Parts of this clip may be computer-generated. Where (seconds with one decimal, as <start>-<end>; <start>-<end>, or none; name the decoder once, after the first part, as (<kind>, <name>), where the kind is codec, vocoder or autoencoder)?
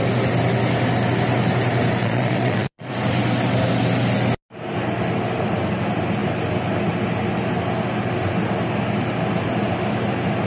2.0-2.9 (vocoder, Vocos)